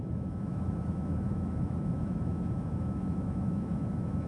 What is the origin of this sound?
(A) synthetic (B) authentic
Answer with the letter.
A